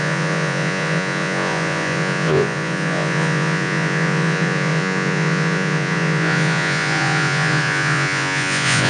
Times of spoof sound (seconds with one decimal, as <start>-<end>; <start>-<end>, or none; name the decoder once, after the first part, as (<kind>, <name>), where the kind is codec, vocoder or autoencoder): 0.0-8.9 (vocoder, Vocos)